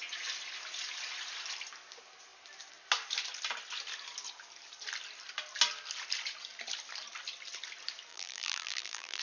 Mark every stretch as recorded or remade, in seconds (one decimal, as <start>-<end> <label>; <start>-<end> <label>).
0.0-8.1 recorded; 8.1-9.2 remade